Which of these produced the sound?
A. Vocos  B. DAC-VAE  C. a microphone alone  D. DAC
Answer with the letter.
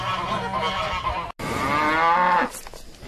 C